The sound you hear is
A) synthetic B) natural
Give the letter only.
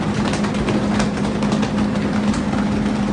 B